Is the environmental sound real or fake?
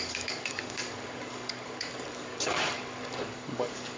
fake